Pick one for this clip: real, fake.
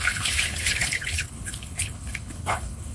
fake